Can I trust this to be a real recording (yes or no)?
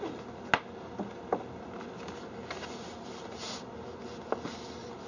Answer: yes